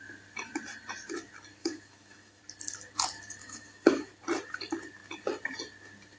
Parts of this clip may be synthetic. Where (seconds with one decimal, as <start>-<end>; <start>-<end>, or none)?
1.6-2.4; 3.4-4.1